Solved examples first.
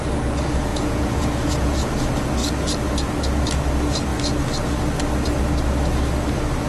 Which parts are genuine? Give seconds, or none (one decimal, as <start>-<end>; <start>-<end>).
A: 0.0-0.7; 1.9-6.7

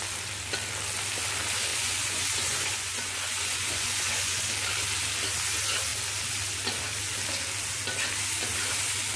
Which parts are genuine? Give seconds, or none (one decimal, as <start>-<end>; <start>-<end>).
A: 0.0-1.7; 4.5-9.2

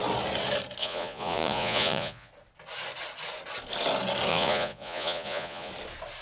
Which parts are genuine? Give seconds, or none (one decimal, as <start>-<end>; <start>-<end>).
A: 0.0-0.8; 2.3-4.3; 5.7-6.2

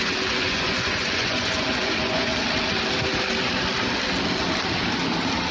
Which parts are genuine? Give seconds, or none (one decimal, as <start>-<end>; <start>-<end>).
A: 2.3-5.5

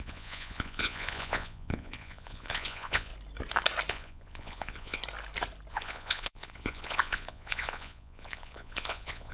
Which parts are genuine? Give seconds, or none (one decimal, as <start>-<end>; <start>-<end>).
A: 3.1-3.9; 5.0-5.7

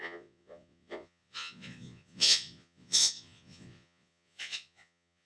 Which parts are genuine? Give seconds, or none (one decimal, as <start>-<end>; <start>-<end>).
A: none

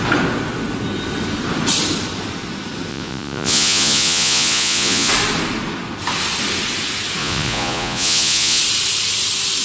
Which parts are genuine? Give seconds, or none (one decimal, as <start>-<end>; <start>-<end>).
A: 0.0-2.9; 5.1-7.2; 8.6-9.6

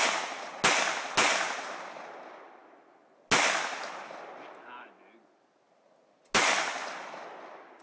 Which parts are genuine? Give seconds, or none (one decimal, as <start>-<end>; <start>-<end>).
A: 0.0-7.8